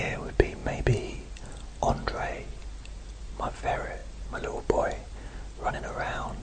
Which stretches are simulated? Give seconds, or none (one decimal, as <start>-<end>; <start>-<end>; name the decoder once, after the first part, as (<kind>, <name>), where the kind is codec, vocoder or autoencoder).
none